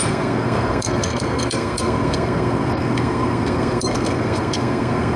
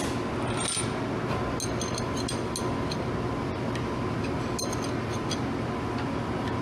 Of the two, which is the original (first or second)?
second